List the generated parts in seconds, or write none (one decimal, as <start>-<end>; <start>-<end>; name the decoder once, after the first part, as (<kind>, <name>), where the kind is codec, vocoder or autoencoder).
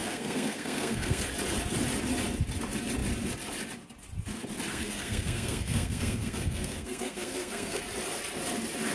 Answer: 0.0-1.3 (codec, SNAC); 4.7-7.8